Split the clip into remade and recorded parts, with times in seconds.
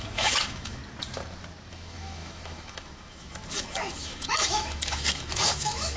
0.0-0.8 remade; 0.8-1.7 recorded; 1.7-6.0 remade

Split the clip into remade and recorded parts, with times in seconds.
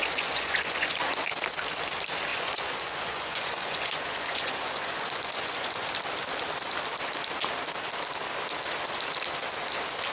0.0-1.3 remade; 1.3-2.3 recorded; 2.3-5.9 remade; 5.9-10.1 recorded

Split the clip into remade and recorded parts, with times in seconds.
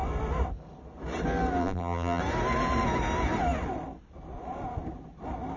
0.0-1.6 recorded; 1.6-2.2 remade; 2.2-5.6 recorded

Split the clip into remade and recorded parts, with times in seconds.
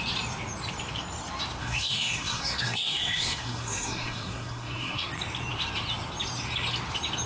0.0-1.6 recorded; 1.6-5.1 remade; 5.1-7.3 recorded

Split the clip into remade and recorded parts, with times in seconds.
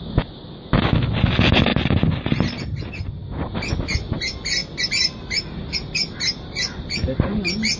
0.0-7.8 recorded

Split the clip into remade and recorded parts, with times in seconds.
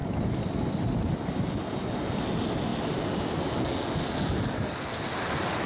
0.0-1.2 remade; 1.2-2.7 recorded; 2.7-3.5 remade; 3.5-5.7 recorded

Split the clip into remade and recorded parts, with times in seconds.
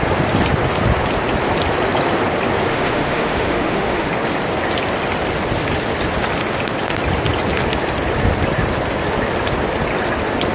0.0-2.7 recorded; 2.7-4.1 remade; 4.1-10.5 recorded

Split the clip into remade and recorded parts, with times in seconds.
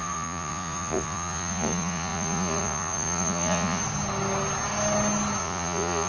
0.0-3.8 remade; 3.8-5.4 recorded; 5.4-6.1 remade